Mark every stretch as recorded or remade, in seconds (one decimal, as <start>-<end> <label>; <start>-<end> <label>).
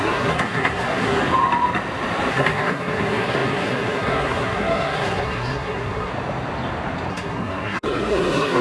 0.0-1.2 remade; 1.2-2.3 recorded; 2.3-6.1 remade; 6.1-7.1 recorded; 7.1-8.6 remade